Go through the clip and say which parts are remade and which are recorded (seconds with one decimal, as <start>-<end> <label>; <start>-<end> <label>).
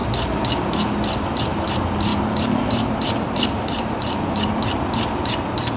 0.0-2.1 recorded; 2.1-4.5 remade; 4.5-5.8 recorded